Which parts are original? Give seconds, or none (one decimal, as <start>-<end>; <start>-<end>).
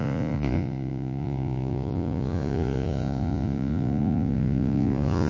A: none